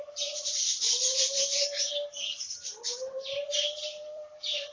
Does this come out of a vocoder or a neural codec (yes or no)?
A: yes